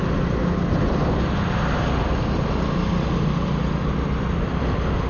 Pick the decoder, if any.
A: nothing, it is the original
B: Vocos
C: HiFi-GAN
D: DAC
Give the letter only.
A